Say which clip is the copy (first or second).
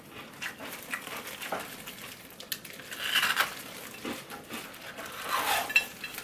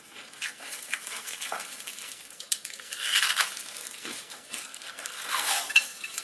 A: second